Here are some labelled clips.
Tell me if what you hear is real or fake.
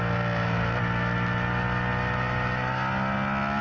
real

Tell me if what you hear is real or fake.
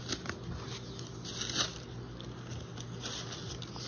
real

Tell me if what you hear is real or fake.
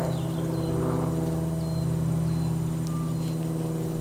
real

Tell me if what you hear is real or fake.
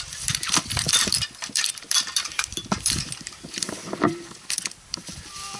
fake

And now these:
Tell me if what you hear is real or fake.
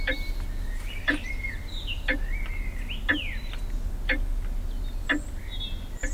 real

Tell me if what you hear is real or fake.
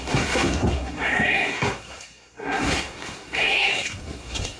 fake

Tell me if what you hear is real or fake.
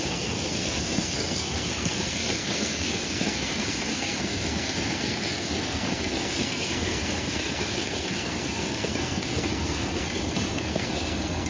fake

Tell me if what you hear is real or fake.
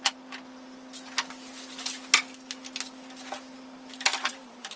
real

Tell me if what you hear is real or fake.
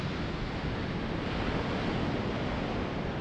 real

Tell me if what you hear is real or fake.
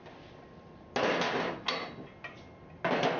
real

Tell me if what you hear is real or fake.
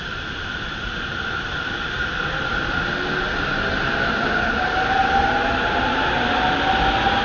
real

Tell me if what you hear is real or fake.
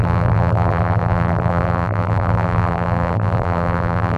fake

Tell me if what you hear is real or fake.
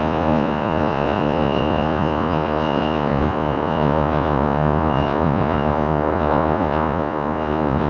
fake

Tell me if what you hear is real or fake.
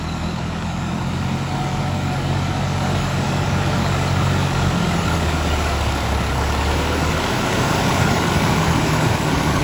fake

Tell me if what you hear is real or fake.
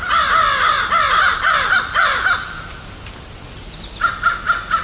real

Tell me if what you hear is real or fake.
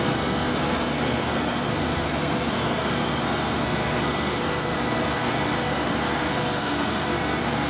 fake